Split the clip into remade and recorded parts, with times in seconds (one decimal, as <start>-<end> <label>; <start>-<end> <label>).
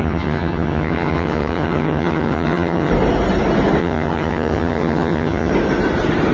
0.0-2.9 remade; 2.9-3.8 recorded; 3.8-5.5 remade; 5.5-6.3 recorded